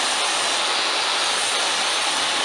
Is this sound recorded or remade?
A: recorded